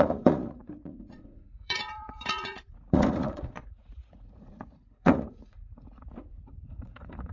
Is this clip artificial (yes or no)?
yes